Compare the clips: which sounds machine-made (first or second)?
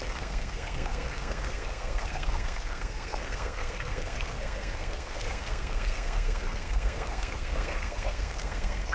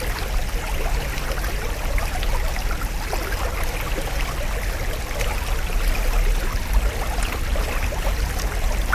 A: first